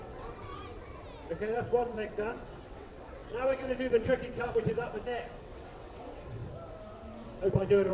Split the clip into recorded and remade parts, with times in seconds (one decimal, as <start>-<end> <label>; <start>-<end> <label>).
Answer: 0.0-0.5 remade; 0.5-1.3 recorded; 1.3-6.4 remade; 6.4-7.2 recorded; 7.2-7.9 remade